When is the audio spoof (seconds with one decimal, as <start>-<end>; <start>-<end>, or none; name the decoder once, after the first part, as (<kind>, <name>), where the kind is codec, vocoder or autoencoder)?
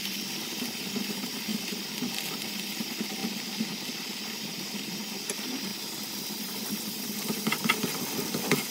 0.0-3.2 (vocoder, BigVGAN v2); 4.8-5.7; 6.2-8.7